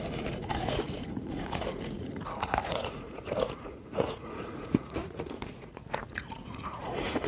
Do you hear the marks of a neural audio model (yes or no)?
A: yes